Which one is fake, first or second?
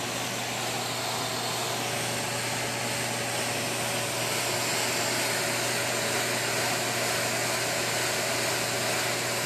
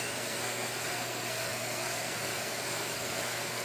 second